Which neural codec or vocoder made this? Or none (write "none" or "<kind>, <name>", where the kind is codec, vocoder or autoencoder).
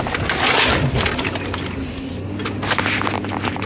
none